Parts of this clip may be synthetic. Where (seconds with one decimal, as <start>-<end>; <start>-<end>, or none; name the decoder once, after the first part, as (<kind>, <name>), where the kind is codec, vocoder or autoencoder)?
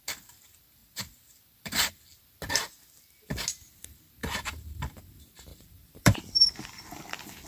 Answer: 0.8-1.9 (vocoder, BigVGAN v2); 4.2-5.0; 5.5-6.2